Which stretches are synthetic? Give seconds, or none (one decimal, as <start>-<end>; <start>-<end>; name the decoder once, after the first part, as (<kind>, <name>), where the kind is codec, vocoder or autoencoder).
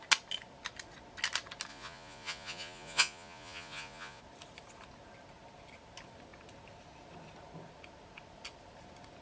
1.7-4.2 (vocoder, Vocos)